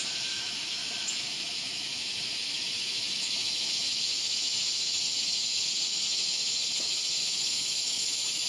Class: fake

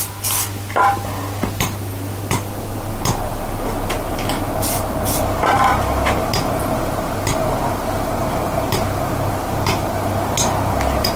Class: real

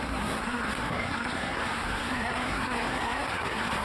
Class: fake